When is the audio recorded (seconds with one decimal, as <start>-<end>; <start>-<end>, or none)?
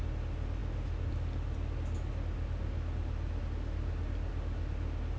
0.0-5.2